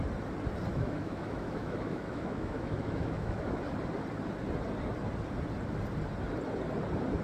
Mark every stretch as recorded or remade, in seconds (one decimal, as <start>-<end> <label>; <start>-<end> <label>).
0.0-0.7 recorded; 0.7-3.6 remade; 3.6-7.2 recorded